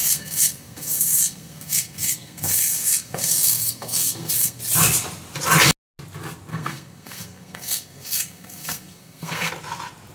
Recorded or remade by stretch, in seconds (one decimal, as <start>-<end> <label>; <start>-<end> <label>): 0.0-4.6 remade; 4.6-6.5 recorded; 6.5-9.5 remade; 9.5-10.1 recorded